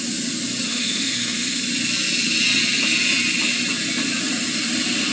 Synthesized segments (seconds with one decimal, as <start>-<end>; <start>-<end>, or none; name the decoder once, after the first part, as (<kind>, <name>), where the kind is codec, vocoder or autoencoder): 0.7-1.6 (autoencoder, DAC-VAE)